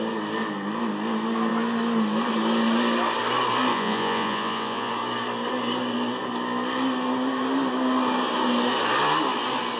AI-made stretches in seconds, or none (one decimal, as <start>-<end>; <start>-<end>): 3.7-4.9